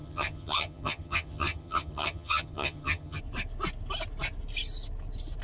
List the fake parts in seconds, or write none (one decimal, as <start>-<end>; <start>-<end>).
0.0-3.2